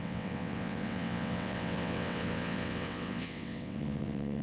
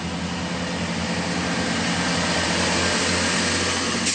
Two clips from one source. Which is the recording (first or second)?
second